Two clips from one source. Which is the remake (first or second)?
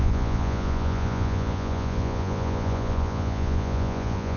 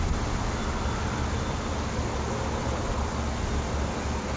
first